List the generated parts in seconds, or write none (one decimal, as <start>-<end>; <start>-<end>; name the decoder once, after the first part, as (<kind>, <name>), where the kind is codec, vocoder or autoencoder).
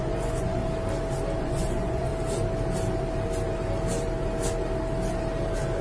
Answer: 0.0-0.6 (vocoder, Vocos); 1.4-2.1